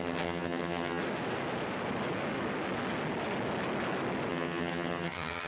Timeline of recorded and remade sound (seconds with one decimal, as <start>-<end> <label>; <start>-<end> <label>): 0.0-1.0 remade; 1.0-4.3 recorded; 4.3-5.5 remade